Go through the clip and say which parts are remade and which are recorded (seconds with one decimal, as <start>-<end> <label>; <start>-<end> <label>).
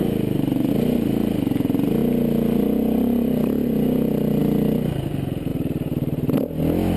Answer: 0.0-0.7 remade; 0.7-5.5 recorded; 5.5-6.6 remade; 6.6-7.0 recorded